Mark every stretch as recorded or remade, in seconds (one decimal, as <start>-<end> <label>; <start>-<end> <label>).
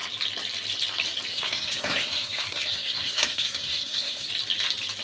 0.0-1.3 recorded; 1.3-4.3 remade; 4.3-5.0 recorded